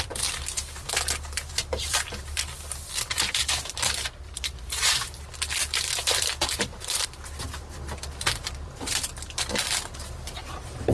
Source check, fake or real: fake